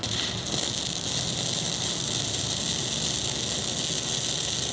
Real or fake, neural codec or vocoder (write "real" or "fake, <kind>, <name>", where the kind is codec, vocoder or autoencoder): real